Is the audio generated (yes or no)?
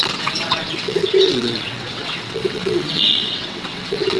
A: yes